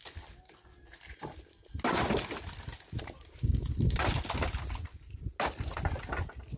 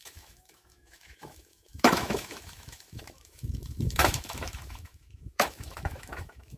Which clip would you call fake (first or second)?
second